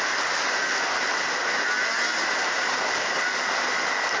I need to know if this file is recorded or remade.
recorded